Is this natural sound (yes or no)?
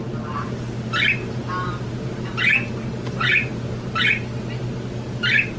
yes